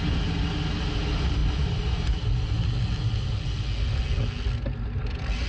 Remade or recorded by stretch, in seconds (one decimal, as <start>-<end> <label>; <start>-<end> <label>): 0.0-5.5 recorded

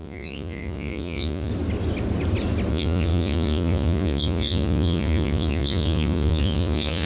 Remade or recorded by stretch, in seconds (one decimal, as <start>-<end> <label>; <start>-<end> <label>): 0.0-1.5 remade; 1.5-2.7 recorded; 2.7-7.1 remade